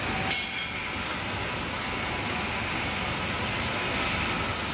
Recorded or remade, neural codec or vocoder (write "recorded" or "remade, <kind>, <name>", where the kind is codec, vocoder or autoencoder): recorded